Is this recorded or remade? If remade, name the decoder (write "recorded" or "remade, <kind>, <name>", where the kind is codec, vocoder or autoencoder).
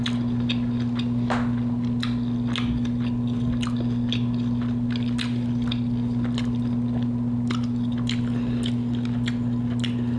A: recorded